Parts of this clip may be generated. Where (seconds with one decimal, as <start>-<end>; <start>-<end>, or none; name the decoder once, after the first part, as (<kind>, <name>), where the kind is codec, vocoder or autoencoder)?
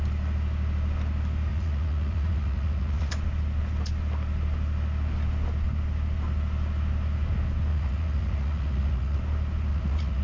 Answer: 1.5-3.1 (vocoder, Vocos); 7.7-9.2; 9.7-10.2